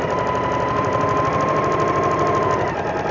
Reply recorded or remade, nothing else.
recorded